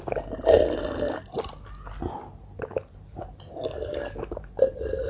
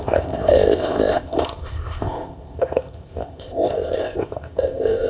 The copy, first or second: second